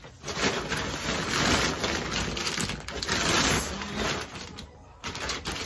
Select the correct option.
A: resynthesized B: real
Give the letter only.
B